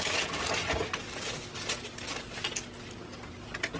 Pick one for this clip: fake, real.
real